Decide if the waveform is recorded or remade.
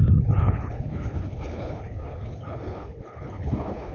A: remade